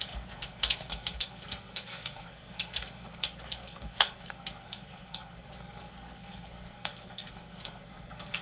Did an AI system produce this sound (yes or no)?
yes